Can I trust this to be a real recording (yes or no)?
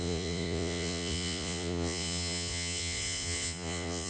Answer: no